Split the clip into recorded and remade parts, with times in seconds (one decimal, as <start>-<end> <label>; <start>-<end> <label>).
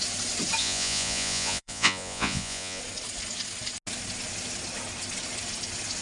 0.0-0.6 recorded; 0.6-2.8 remade; 2.8-6.0 recorded